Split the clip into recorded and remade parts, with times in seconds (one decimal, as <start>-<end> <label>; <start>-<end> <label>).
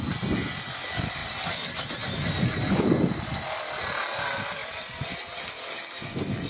0.0-1.2 recorded; 1.2-1.8 remade; 1.8-4.6 recorded; 4.6-5.4 remade; 5.4-6.5 recorded